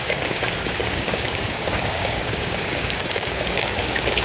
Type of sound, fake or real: fake